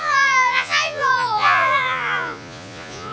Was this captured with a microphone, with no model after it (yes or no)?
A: no